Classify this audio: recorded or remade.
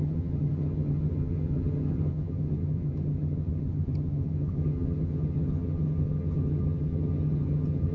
remade